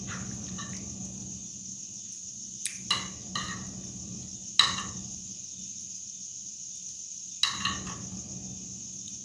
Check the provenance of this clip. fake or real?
real